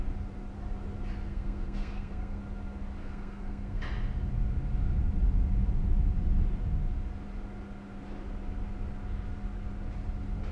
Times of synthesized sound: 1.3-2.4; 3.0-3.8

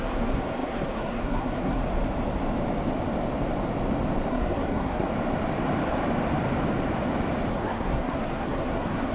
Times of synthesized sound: 0.0-1.8; 4.3-5.1; 7.5-9.1

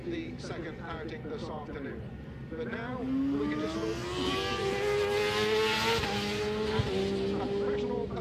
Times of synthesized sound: none